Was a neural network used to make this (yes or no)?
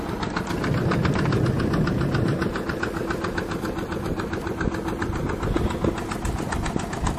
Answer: no